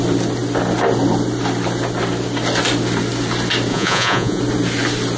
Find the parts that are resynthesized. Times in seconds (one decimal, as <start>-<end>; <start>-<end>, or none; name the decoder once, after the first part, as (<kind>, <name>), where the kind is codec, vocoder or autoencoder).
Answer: 3.7-4.4 (vocoder, Vocos)